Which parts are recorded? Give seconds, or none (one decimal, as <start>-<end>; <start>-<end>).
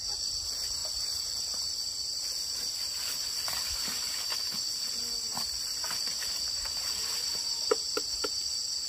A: 0.0-5.3; 8.3-8.9